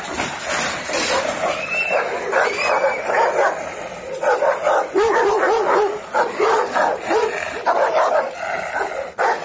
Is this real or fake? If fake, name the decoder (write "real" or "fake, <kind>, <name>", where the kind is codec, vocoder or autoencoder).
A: real